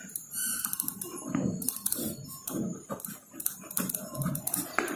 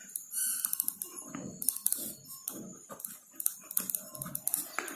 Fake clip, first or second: first